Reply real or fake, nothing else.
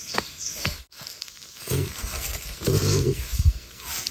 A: fake